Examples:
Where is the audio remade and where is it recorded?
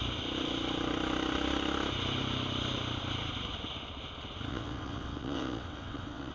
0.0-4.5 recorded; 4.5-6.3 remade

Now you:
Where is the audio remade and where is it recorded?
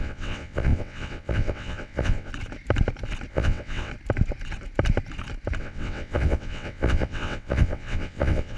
0.0-2.3 remade; 2.3-3.3 recorded; 3.3-3.9 remade; 3.9-5.6 recorded; 5.6-8.6 remade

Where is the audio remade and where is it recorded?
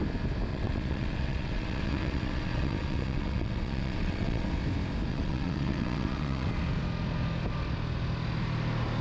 0.0-0.5 recorded; 0.5-4.5 remade; 4.5-5.1 recorded; 5.1-6.5 remade; 6.5-9.0 recorded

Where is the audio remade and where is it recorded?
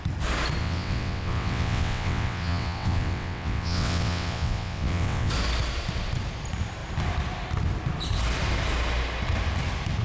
0.0-0.6 recorded; 0.6-5.3 remade; 5.3-10.0 recorded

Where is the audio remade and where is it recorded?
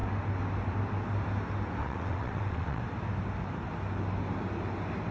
0.0-1.8 recorded; 1.8-2.8 remade; 2.8-5.1 recorded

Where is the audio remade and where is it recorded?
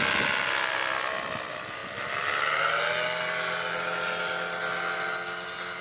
0.0-5.8 recorded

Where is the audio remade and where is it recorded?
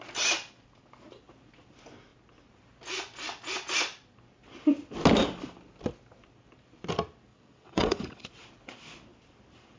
0.0-7.3 recorded; 7.3-8.3 remade; 8.3-9.8 recorded